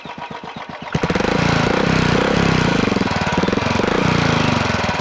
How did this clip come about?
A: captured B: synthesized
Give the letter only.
A